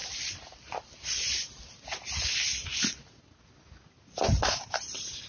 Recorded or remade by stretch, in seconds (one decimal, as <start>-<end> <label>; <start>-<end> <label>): 0.0-5.3 recorded